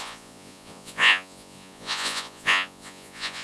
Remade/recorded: remade